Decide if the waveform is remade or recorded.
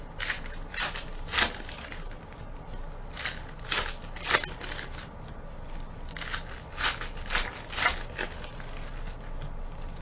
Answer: recorded